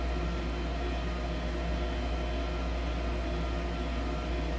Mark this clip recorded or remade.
recorded